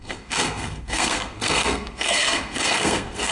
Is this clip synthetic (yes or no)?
yes